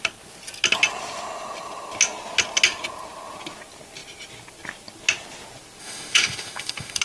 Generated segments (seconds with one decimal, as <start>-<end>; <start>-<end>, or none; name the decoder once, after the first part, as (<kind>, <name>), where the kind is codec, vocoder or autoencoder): 5.8-7.0 (autoencoder, DAC-VAE)